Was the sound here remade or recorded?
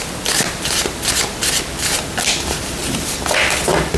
recorded